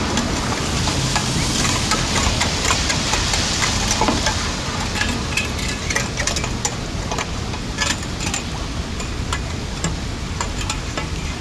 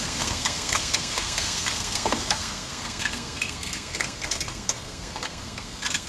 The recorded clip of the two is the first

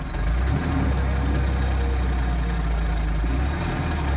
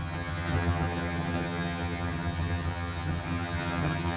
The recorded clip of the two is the first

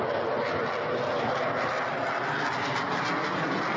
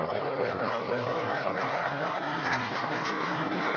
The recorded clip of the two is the first